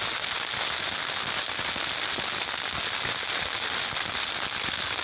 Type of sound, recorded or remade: recorded